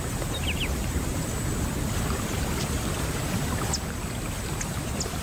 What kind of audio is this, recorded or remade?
recorded